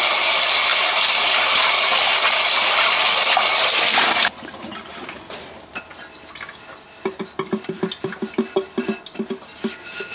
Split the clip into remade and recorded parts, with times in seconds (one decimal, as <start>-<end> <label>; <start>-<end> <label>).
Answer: 0.0-10.1 recorded